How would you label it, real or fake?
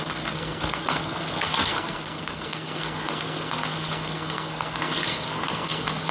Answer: fake